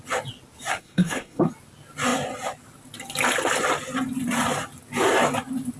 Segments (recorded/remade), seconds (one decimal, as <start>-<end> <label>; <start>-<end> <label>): 0.0-0.7 recorded; 0.7-1.5 remade; 1.5-5.8 recorded